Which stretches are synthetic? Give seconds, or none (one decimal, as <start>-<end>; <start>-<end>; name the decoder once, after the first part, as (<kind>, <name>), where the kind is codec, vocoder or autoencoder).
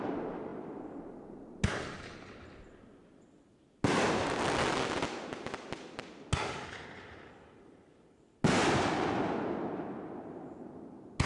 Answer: none